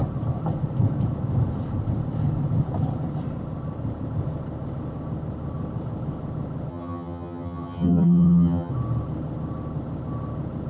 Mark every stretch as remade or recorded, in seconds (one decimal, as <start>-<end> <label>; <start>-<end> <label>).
0.0-6.7 recorded; 6.7-8.7 remade; 8.7-10.7 recorded